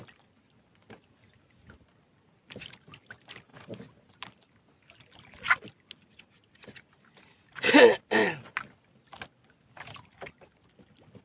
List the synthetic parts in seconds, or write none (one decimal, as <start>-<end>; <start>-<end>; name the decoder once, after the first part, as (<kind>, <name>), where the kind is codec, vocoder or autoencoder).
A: none